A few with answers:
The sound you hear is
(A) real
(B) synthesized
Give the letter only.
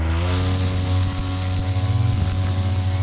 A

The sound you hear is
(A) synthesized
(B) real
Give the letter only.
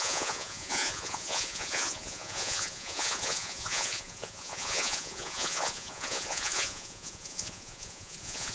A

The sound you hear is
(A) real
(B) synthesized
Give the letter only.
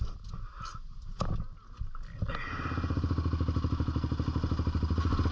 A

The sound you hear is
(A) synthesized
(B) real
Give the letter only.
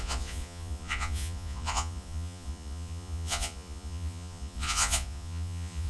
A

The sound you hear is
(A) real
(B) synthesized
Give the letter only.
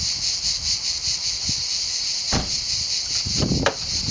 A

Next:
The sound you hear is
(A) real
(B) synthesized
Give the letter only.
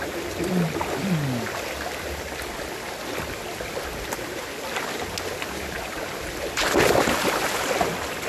A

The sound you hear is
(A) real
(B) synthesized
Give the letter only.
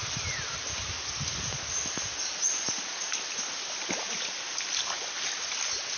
A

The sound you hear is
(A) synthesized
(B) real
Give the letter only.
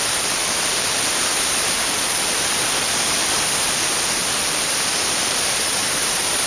B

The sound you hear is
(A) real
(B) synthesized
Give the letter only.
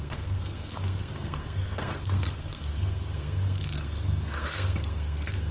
B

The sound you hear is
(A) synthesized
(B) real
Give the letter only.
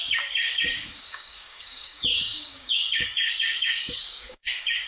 A